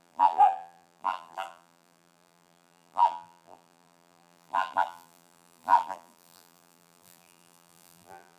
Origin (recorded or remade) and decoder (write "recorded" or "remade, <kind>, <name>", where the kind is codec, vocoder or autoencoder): remade, vocoder, BigVGAN v2